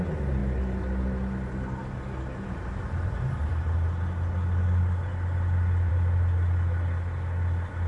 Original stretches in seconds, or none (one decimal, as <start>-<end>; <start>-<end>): 0.0-7.9